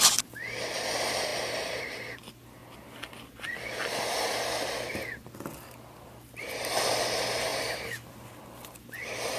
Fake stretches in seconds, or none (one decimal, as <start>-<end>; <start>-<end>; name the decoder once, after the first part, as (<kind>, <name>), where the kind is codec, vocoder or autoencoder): 0.0-1.3 (vocoder, BigVGAN v2); 1.8-2.6; 6.8-9.4